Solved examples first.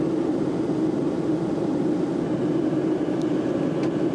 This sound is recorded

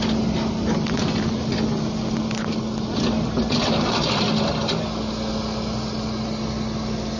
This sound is recorded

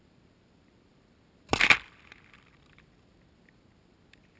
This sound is recorded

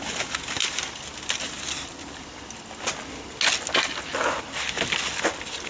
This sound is recorded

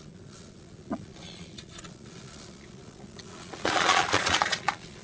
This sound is remade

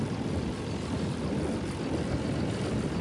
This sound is recorded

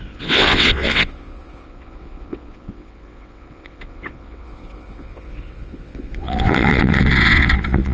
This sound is remade